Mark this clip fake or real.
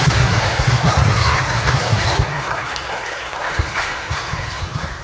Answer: fake